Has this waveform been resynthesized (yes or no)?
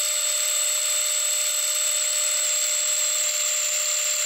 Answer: no